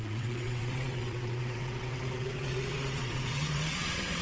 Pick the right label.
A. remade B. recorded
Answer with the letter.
A